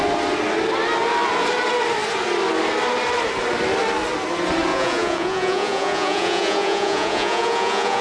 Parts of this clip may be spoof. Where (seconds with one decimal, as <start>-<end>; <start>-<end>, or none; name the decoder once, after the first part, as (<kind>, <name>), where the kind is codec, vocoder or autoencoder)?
4.7-8.0 (vocoder, Vocos)